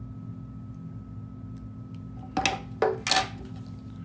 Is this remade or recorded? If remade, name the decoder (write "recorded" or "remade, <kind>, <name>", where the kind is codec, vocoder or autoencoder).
recorded